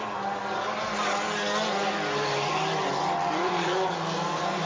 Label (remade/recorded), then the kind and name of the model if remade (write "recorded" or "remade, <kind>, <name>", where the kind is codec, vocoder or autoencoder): recorded